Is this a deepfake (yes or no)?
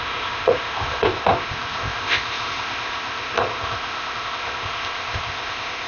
yes